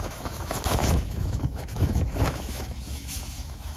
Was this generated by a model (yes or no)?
yes